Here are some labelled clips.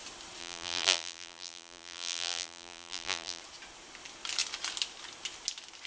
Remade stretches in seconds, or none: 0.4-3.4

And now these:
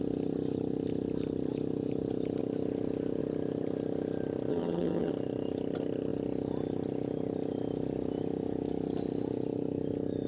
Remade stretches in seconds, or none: 4.5-5.1

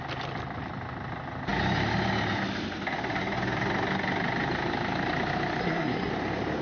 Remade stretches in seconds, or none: 5.6-6.1

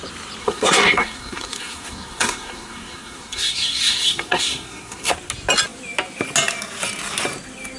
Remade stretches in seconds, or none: 0.4-5.1

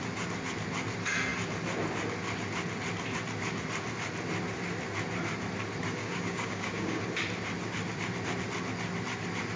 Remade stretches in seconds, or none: 6.0-7.0